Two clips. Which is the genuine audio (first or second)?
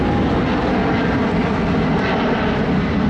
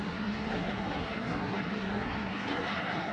first